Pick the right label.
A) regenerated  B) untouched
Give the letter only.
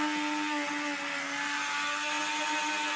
B